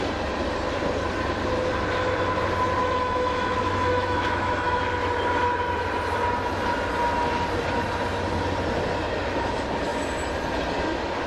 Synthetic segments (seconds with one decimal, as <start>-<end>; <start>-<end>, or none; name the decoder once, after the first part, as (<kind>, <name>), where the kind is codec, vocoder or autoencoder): 2.8-4.8 (autoencoder, DAC-VAE)